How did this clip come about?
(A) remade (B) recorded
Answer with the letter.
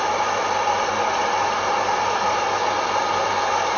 B